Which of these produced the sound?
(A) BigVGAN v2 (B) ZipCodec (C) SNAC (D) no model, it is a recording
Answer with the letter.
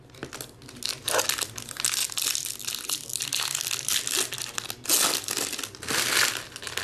D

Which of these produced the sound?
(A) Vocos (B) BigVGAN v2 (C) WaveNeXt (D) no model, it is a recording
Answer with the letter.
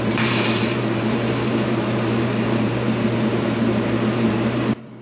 B